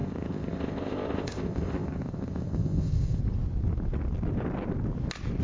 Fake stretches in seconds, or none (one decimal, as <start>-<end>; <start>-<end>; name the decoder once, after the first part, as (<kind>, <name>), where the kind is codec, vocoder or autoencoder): 0.0-3.2 (codec, ZipCodec)